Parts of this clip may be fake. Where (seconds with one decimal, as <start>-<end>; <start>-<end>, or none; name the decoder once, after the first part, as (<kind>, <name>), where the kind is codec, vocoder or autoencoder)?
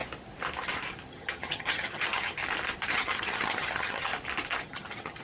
1.1-2.4 (vocoder, HiFi-GAN); 2.9-4.1; 4.6-5.2